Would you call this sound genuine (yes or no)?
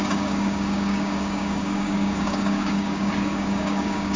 no